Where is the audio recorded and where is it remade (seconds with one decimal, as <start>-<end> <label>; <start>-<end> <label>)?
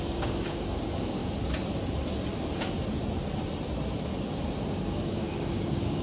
0.0-1.2 remade; 1.2-4.7 recorded; 4.7-6.0 remade